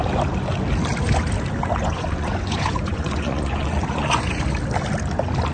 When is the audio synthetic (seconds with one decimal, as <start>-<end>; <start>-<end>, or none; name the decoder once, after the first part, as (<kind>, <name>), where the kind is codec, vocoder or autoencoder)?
1.8-4.4 (vocoder, Vocos)